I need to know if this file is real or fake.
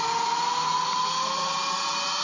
real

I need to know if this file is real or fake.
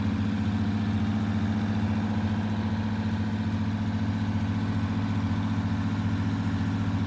real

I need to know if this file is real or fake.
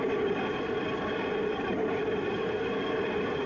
real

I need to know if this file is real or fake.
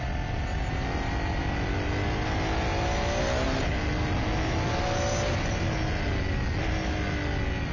real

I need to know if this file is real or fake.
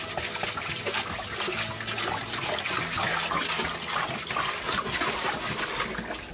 real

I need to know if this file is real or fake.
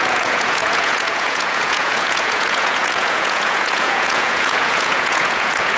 fake